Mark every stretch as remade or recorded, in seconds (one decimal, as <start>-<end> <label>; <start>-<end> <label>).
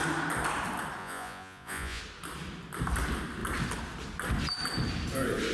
0.0-1.0 recorded; 1.0-2.0 remade; 2.0-5.5 recorded